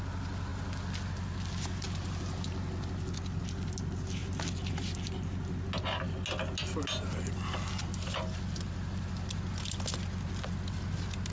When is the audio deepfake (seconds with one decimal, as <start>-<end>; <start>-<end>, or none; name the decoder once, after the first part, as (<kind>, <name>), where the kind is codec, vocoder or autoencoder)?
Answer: none